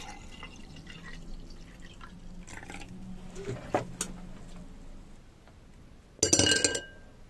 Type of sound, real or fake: real